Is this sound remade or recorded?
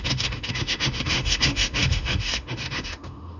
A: remade